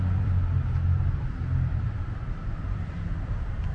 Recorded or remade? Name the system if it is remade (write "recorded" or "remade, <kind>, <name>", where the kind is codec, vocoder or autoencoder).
remade, vocoder, BigVGAN v2